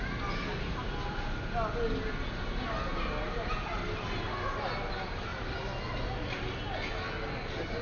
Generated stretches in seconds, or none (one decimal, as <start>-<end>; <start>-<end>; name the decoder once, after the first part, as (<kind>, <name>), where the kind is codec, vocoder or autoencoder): none